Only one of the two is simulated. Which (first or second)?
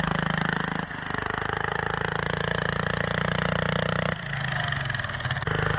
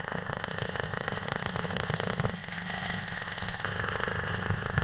second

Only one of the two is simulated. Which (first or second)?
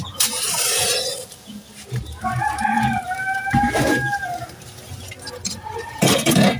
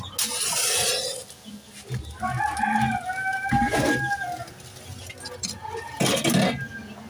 first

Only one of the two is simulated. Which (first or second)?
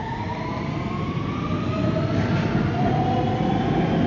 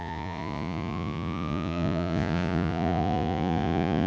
second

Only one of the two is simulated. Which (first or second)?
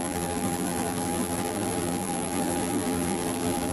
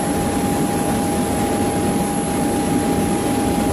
first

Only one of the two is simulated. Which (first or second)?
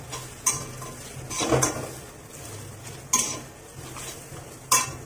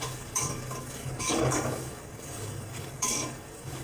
second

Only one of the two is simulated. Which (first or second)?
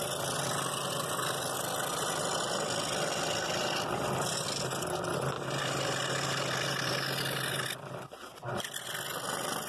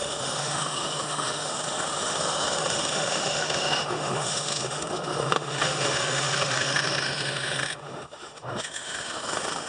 second